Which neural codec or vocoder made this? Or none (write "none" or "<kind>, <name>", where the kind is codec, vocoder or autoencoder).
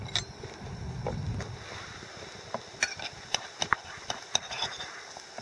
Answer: none